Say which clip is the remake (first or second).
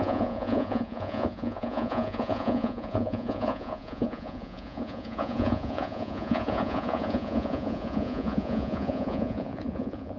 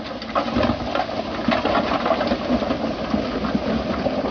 first